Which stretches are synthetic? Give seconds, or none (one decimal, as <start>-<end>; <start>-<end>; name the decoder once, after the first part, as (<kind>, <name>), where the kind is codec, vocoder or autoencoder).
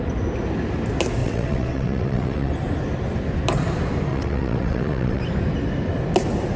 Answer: 1.2-2.5 (vocoder, WaveNeXt); 4.1-5.2